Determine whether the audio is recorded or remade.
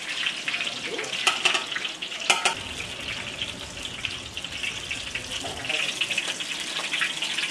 recorded